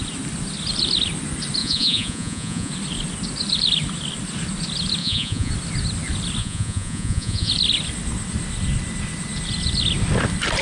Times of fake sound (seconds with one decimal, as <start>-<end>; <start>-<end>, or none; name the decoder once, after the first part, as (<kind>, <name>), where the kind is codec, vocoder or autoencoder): 1.6-2.7 (vocoder, Vocos); 5.0-5.5; 6.4-7.5